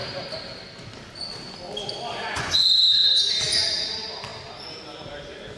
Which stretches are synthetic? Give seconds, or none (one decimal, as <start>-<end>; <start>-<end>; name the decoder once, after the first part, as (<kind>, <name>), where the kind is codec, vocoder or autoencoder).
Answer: 2.1-2.7 (vocoder, Vocos)